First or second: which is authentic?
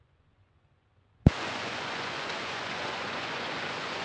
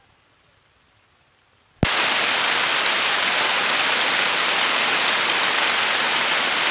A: second